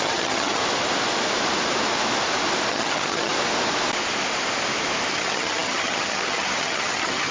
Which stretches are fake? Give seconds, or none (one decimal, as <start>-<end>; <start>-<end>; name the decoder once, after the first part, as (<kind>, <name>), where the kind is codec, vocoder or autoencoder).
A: 0.0-0.6 (vocoder, HiFi-GAN); 2.7-3.3; 5.1-7.3